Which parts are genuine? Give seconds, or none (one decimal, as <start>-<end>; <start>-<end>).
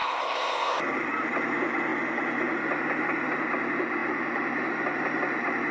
0.8-5.7